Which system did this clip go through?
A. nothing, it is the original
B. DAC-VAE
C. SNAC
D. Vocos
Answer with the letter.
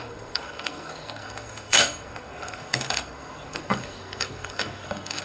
C